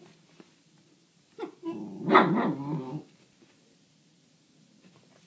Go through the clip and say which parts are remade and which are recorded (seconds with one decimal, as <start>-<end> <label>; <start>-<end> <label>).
0.0-5.3 recorded